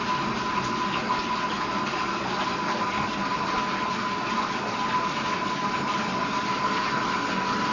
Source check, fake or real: real